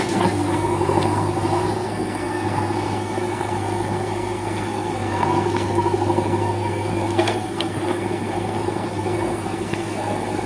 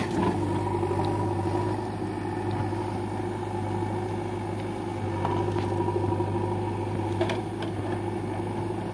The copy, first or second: first